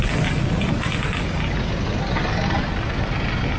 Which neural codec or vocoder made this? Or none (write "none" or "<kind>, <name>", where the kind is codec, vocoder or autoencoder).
none